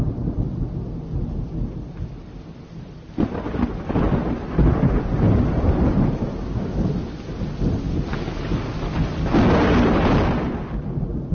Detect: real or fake real